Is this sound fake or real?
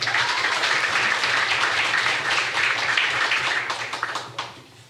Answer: fake